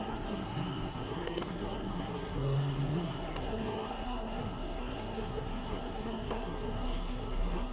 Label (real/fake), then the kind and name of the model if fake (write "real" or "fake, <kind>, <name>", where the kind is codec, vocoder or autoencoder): fake, codec, SNAC